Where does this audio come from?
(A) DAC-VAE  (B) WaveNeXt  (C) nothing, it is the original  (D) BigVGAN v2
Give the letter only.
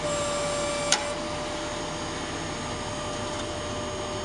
C